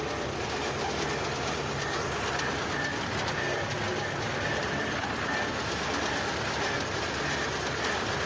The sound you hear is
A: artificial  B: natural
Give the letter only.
B